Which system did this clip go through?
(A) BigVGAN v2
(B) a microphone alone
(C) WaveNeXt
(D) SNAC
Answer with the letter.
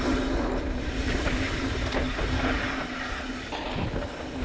B